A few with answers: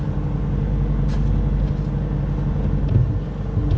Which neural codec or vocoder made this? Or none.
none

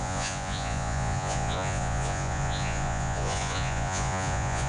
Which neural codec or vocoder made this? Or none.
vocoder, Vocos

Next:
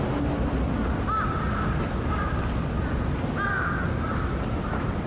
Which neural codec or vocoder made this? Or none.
none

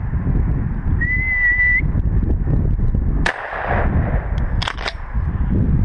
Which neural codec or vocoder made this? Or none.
none